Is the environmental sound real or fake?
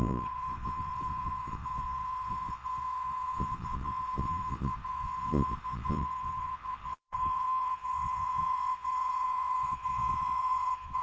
fake